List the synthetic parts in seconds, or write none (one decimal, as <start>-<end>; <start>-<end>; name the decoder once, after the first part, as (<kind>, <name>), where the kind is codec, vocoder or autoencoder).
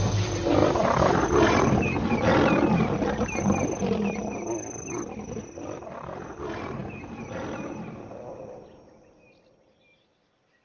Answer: none